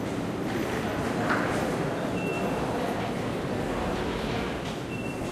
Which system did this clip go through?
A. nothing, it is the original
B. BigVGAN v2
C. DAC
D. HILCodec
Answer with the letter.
A